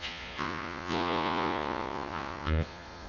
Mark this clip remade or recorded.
remade